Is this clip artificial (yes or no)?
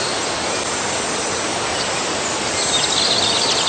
no